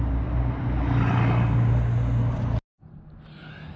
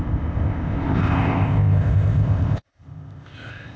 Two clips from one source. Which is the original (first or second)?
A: first